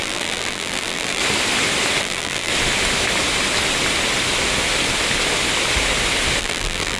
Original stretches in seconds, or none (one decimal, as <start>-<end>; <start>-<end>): 1.2-2.0; 2.5-6.4